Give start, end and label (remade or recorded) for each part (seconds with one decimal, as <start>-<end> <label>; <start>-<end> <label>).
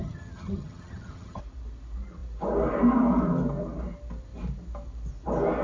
0.0-1.4 remade; 1.4-5.6 recorded